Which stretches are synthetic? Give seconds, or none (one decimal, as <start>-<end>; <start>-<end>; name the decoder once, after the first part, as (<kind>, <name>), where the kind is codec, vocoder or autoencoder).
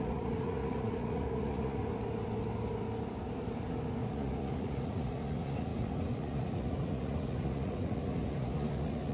0.0-1.8 (vocoder, Vocos); 4.1-9.1